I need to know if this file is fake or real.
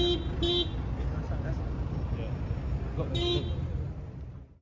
real